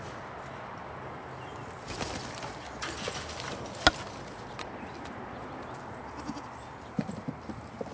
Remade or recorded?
recorded